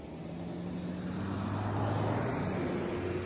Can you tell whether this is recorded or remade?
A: recorded